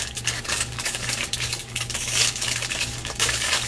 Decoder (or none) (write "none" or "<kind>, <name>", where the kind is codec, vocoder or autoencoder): codec, DAC